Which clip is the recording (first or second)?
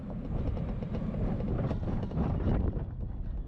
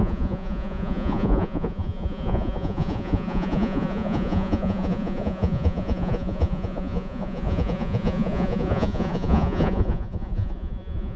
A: first